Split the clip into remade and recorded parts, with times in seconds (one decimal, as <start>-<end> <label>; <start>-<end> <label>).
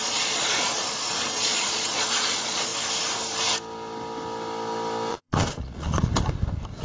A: 0.0-2.7 remade; 2.7-5.1 recorded; 5.1-6.1 remade; 6.1-6.8 recorded